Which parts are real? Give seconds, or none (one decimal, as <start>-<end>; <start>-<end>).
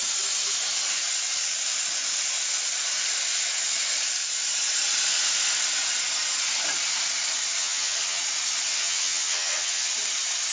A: 0.0-7.6; 8.2-8.7; 9.9-10.5